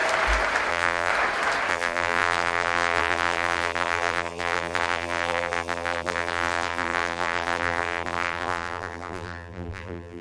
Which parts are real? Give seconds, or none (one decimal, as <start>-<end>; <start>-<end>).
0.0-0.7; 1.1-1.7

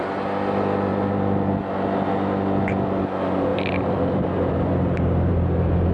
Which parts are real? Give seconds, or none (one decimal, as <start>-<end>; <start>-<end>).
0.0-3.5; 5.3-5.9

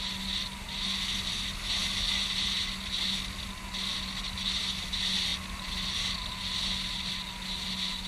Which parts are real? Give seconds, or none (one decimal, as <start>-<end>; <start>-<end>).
0.0-8.1